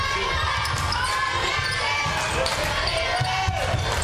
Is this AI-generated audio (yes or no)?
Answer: no